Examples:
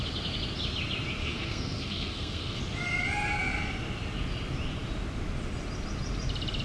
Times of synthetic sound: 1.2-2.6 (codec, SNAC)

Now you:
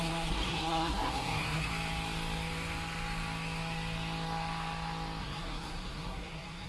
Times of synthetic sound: 0.0-1.7 (codec, SNAC); 5.2-6.7

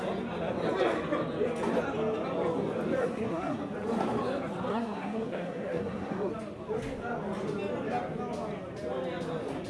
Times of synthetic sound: 3.0-3.6 (codec, SNAC); 4.7-6.3

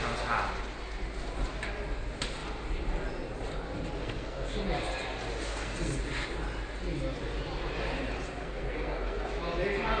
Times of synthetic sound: 4.0-4.6 (codec, SNAC); 5.5-6.0; 8.4-9.3